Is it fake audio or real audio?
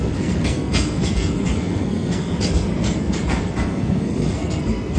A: fake